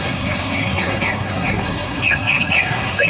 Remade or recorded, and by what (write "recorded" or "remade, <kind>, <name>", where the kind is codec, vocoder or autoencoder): remade, codec, SNAC